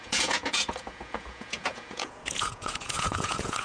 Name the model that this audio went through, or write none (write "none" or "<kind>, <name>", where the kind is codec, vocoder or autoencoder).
vocoder, Vocos